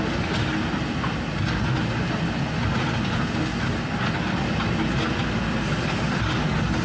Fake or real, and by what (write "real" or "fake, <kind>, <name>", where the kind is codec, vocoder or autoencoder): real